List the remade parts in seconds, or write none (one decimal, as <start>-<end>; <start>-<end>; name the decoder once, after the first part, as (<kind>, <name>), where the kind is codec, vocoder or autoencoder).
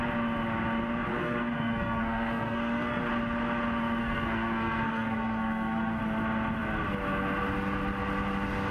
1.1-3.0 (codec, SNAC); 4.0-6.0